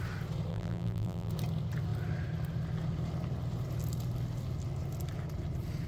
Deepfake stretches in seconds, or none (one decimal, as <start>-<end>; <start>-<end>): 0.5-1.3